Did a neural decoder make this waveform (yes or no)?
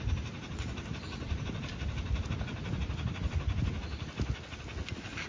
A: no